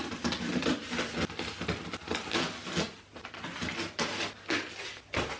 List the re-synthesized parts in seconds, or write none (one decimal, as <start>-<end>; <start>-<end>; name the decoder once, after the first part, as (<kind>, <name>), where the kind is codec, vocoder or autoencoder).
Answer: none